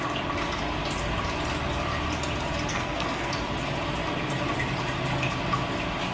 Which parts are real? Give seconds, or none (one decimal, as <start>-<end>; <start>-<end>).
0.0-2.7; 3.3-6.1